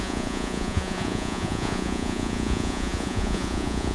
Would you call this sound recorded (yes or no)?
no